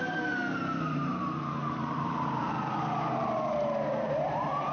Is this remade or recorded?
remade